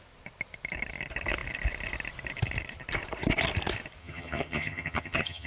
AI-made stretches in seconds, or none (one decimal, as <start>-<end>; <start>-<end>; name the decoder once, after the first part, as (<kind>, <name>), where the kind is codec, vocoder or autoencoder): 4.0-5.5 (vocoder, HiFi-GAN)